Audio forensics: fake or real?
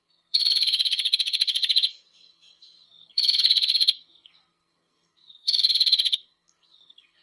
fake